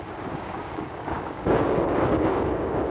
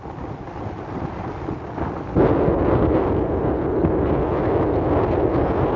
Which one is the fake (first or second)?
first